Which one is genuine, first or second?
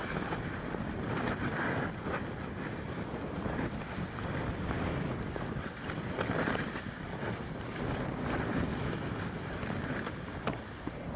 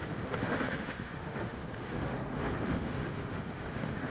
first